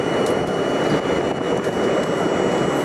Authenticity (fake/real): real